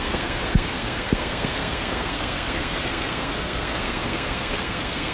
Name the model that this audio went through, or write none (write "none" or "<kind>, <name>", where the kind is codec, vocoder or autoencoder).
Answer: codec, SNAC